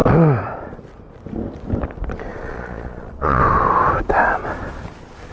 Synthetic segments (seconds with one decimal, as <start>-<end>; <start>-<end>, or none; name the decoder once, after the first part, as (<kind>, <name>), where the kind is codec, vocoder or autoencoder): 2.3-3.4 (vocoder, Vocos)

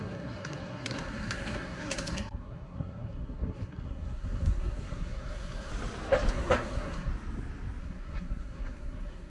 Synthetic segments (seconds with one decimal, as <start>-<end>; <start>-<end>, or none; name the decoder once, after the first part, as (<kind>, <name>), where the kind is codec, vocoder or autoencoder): 0.0-5.7 (codec, SNAC); 6.3-7.1; 7.8-9.3